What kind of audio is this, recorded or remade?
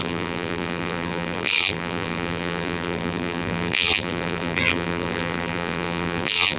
remade